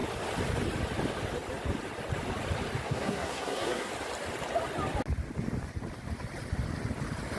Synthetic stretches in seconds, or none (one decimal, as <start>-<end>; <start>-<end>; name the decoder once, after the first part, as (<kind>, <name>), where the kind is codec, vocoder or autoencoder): 2.8-3.9 (codec, SNAC)